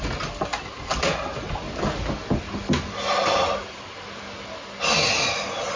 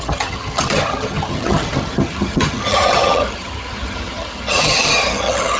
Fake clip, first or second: second